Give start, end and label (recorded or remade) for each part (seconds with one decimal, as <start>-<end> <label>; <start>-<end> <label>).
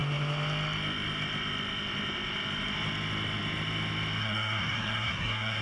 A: 0.0-4.2 recorded; 4.2-5.6 remade